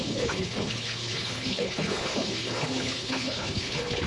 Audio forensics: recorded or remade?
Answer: remade